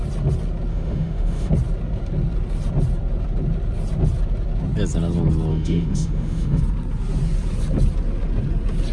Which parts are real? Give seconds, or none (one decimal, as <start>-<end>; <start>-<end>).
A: 0.0-0.7; 1.5-5.5; 6.6-8.9